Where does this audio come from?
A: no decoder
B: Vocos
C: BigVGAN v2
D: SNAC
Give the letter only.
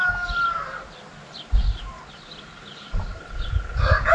A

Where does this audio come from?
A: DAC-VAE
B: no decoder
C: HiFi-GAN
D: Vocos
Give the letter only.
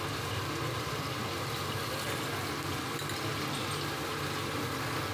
B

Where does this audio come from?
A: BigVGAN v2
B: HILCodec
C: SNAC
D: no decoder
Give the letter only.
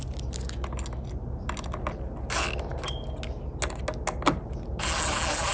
D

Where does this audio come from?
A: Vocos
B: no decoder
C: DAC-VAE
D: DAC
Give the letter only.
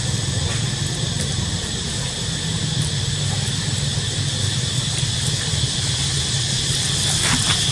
B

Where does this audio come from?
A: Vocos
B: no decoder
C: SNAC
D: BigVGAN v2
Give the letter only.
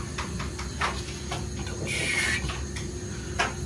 B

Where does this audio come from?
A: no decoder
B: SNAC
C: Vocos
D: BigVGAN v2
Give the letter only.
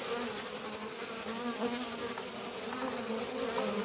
A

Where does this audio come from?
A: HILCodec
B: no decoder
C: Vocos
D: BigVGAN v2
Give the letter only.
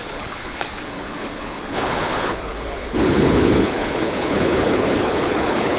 A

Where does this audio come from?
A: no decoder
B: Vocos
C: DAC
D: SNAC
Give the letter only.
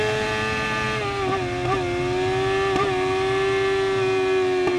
A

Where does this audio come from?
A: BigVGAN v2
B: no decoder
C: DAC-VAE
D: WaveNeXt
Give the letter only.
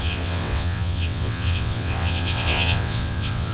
D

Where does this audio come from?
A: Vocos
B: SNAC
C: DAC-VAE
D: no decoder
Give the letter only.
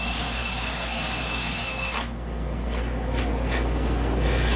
B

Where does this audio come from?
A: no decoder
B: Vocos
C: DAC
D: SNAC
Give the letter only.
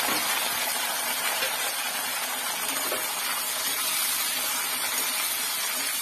A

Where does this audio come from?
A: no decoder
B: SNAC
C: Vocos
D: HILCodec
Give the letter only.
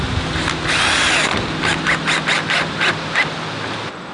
A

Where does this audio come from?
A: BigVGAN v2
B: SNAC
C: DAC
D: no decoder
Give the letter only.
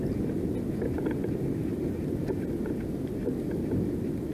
D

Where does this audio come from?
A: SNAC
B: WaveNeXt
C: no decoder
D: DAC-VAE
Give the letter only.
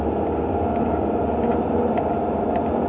C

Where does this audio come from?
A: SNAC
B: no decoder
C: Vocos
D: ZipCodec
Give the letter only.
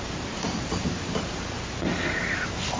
B